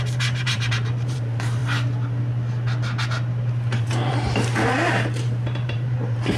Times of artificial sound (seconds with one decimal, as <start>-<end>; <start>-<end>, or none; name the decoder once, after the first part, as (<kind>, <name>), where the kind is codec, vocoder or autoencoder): 0.0-1.6 (vocoder, BigVGAN v2); 3.8-6.4